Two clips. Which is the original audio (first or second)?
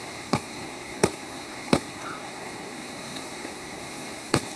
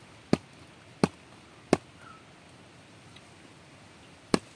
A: second